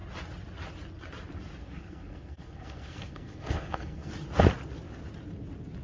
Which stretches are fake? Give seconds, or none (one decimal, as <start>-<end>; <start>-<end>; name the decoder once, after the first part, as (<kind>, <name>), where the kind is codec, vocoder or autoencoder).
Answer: 1.6-4.1 (codec, SNAC)